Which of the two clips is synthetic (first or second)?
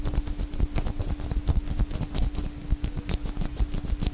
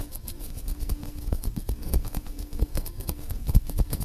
second